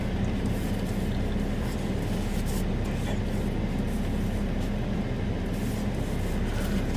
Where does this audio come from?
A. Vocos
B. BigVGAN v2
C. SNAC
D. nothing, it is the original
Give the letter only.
D